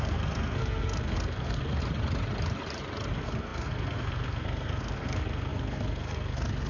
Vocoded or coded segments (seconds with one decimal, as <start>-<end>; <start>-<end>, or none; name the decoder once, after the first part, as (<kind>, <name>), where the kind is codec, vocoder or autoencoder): 0.0-1.8 (codec, SNAC); 3.1-6.7